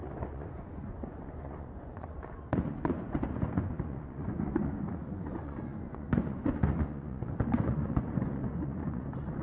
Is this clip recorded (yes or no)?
no